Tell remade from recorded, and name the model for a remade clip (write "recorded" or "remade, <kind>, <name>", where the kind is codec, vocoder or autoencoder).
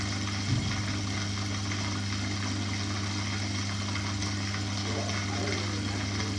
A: recorded